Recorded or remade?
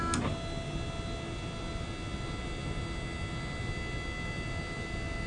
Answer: recorded